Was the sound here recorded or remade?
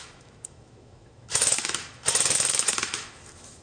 remade